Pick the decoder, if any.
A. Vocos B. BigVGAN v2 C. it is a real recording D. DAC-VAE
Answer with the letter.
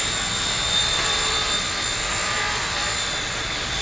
B